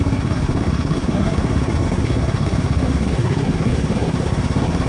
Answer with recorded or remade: remade